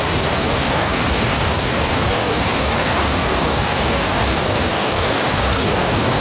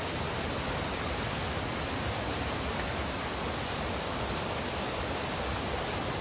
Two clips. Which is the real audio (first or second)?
second